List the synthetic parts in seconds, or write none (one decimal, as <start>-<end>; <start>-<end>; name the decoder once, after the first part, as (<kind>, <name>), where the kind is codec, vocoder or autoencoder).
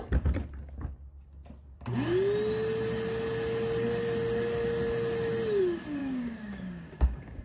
6.0-7.4 (codec, DAC)